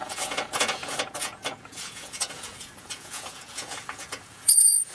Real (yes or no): no